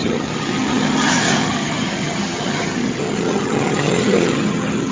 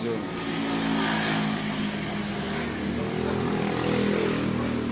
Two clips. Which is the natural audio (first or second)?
second